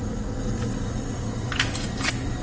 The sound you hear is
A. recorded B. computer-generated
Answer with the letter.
A